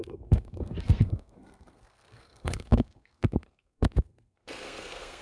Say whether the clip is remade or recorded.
remade